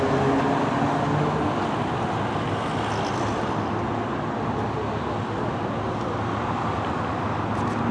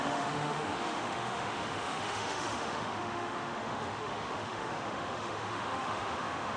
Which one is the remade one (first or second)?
second